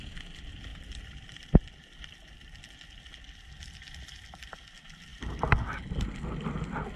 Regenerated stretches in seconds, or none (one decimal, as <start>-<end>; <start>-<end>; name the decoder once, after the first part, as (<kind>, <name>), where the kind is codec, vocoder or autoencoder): 0.7-2.6 (vocoder, BigVGAN v2)